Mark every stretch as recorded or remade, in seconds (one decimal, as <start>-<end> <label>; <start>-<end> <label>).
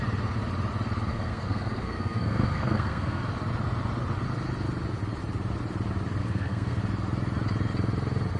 0.0-1.1 recorded; 1.1-3.2 remade; 3.2-6.2 recorded; 6.2-6.8 remade; 6.8-8.4 recorded